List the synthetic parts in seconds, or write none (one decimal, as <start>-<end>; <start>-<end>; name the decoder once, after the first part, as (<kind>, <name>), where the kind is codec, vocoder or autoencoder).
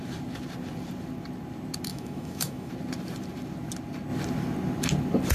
1.9-2.7 (autoencoder, DAC-VAE)